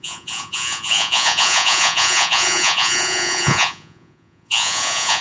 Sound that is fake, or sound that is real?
fake